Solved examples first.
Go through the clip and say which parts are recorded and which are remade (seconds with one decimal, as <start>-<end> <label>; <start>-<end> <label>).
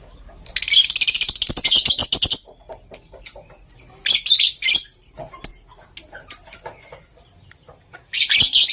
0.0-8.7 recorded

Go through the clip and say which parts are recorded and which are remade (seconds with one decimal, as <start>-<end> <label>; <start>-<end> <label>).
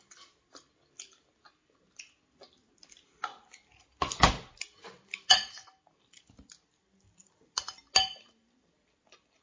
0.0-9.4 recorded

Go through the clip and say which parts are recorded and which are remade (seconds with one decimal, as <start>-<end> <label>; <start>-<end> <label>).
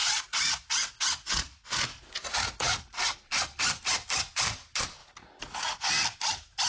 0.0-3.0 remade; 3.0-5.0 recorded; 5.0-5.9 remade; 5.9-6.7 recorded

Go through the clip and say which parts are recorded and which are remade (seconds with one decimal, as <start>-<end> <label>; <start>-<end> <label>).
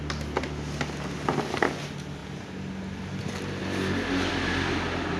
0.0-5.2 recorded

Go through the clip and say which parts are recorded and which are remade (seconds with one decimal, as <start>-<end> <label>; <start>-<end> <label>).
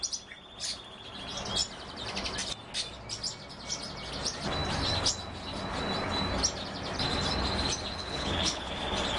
0.0-8.0 recorded; 8.0-8.7 remade; 8.7-9.2 recorded